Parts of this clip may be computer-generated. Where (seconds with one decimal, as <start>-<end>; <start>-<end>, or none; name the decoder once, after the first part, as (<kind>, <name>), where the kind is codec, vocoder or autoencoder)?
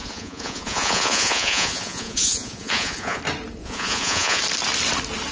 0.0-3.2 (vocoder, Vocos); 3.6-4.4